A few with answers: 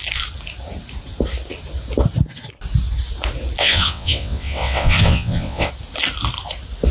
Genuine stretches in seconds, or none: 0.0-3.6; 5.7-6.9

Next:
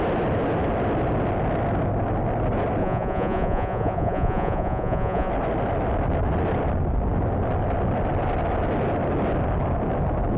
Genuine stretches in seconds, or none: 0.0-2.8; 5.3-10.4

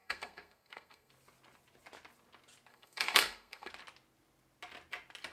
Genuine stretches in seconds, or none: 1.1-2.7; 3.7-5.3